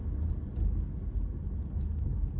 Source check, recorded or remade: recorded